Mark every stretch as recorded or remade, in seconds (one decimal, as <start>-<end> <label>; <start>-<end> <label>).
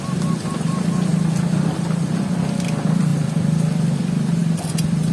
0.0-1.1 recorded; 1.1-2.4 remade; 2.4-3.1 recorded; 3.1-4.0 remade; 4.0-5.1 recorded